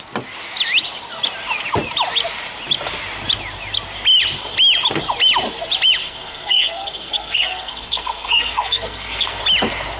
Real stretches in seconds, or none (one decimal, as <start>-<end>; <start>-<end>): 0.0-6.0; 9.4-10.0